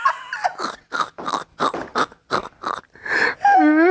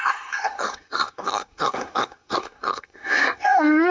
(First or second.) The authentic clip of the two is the first